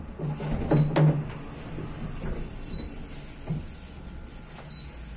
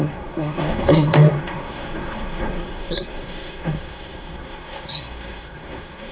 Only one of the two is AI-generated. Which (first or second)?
second